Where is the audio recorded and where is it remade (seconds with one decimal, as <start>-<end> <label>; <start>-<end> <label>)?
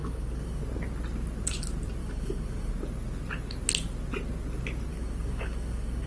0.0-0.6 remade; 0.6-2.0 recorded; 2.0-2.7 remade; 2.7-4.9 recorded; 4.9-6.1 remade